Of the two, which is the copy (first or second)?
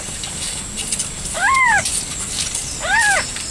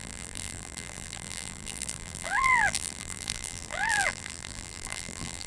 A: second